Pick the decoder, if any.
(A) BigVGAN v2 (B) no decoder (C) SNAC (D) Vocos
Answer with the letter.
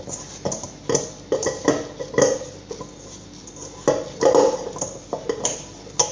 B